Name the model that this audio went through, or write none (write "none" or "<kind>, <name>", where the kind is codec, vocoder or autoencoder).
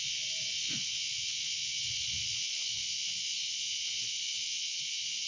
vocoder, Vocos